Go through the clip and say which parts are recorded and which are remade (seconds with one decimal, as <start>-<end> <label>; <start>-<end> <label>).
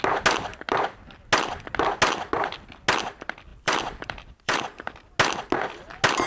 0.0-3.5 recorded; 3.5-4.6 remade; 4.6-6.3 recorded